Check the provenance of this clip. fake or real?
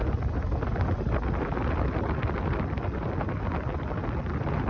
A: real